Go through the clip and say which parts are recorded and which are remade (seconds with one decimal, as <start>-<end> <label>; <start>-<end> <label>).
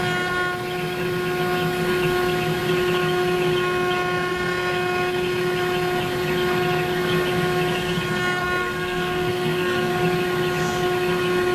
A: 0.0-8.6 recorded; 8.6-9.9 remade; 9.9-11.5 recorded